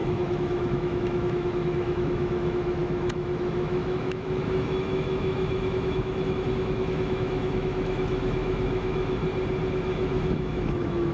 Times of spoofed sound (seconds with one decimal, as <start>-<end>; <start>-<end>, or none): 0.0-9.2; 9.7-11.1